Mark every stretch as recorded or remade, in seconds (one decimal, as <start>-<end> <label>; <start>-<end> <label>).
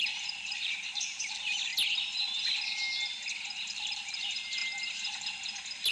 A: 0.0-1.7 remade; 1.7-3.7 recorded; 3.7-4.6 remade; 4.6-5.9 recorded